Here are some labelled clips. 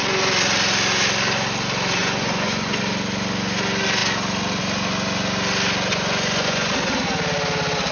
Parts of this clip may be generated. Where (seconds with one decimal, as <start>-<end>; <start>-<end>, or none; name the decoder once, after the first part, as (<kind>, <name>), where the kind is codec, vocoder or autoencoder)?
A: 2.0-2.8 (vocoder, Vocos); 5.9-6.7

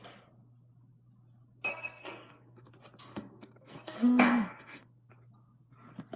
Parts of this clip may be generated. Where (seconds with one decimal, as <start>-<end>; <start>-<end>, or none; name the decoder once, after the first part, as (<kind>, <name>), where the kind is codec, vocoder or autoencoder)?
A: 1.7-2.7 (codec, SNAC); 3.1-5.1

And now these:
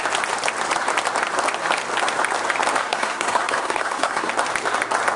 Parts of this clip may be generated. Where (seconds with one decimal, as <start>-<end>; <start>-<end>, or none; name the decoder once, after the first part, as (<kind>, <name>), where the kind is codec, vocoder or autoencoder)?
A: 2.8-4.3 (codec, SNAC)